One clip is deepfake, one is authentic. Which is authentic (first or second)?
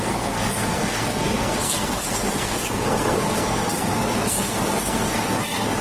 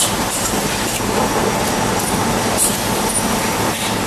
second